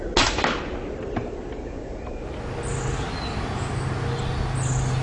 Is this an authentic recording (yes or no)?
yes